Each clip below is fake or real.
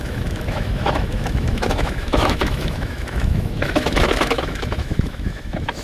fake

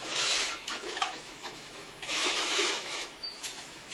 fake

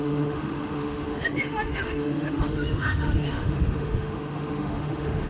fake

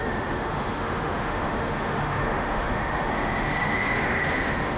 fake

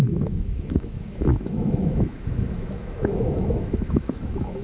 fake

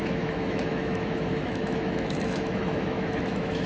fake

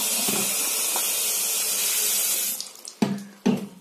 real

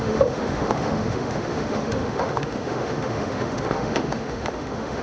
fake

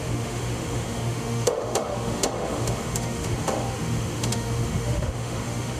fake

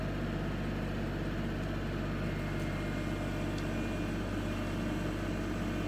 real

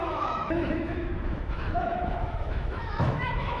fake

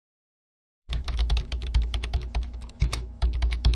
fake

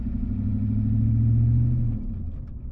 real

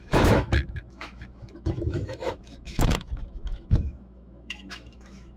fake